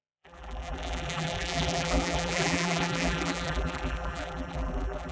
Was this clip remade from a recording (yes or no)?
yes